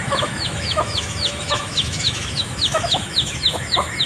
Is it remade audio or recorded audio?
remade